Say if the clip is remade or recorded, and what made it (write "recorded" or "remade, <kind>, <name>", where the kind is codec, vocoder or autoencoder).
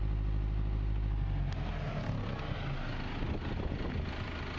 recorded